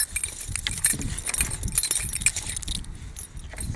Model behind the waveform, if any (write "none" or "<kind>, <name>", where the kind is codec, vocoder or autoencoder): none